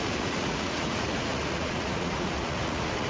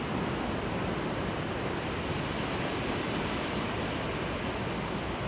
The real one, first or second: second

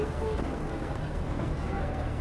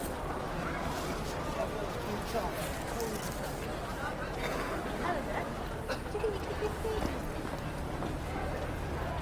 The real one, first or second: second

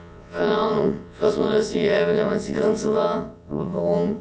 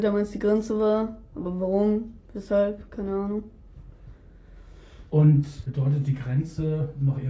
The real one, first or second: second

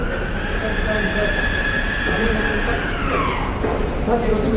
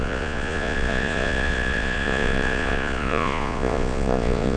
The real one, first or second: first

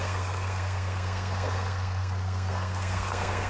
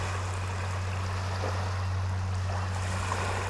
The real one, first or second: second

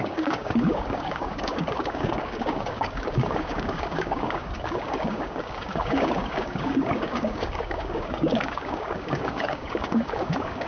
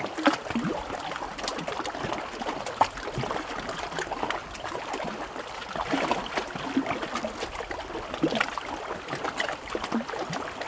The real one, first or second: second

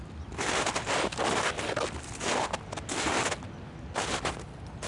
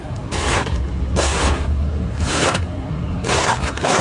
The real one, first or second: first